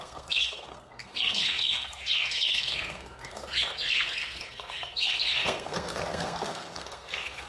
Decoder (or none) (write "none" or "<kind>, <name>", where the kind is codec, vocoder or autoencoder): codec, SNAC